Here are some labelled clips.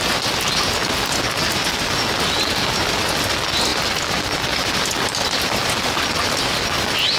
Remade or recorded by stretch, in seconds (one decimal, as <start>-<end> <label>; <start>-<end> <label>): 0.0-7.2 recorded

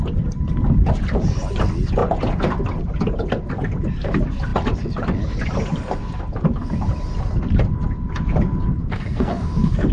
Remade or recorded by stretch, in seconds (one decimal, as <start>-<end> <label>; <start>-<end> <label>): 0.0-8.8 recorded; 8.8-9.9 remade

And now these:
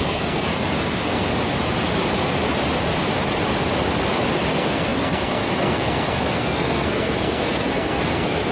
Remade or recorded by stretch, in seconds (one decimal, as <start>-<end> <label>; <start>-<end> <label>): 0.0-1.3 remade; 1.3-4.5 recorded; 4.5-8.5 remade